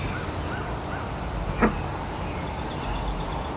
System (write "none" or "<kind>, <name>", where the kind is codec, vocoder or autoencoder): none